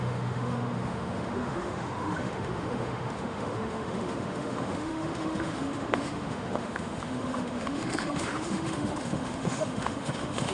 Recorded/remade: remade